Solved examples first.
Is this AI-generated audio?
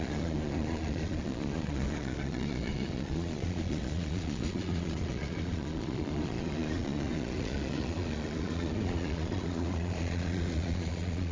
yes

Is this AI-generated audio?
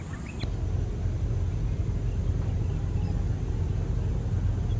no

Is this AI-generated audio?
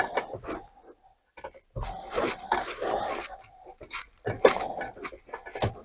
no